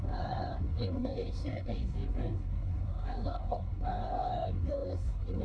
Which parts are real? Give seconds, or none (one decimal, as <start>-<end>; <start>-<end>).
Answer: none